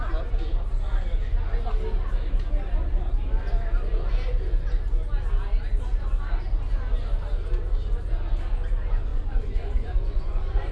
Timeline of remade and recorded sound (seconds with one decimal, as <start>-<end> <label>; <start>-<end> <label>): 0.0-9.1 recorded; 9.1-10.7 remade